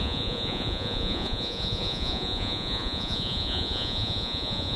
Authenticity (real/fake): fake